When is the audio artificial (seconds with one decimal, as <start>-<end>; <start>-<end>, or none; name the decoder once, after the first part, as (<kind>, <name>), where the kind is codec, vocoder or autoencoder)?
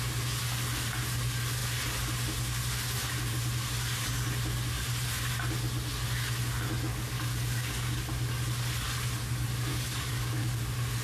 6.9-8.0 (codec, DAC); 9.7-10.6